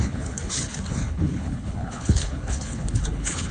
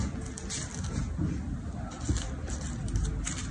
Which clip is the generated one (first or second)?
first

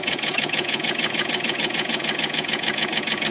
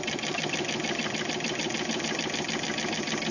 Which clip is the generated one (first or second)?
first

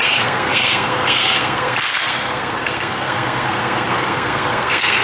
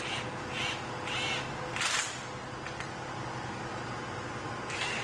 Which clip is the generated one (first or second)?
first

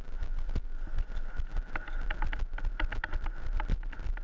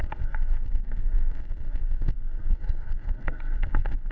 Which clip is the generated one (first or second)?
second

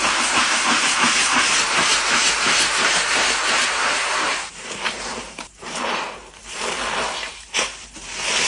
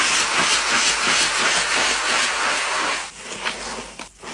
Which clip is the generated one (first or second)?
first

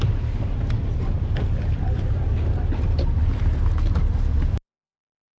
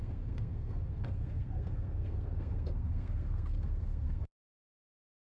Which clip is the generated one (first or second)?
second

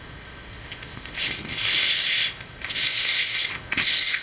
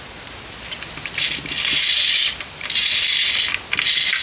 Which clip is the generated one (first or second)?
first